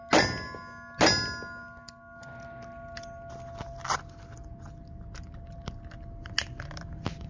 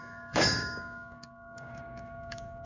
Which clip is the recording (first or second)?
first